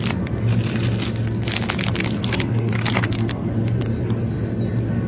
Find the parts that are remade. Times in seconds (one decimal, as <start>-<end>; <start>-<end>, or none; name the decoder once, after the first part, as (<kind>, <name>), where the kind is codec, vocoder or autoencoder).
2.2-3.5 (codec, SNAC)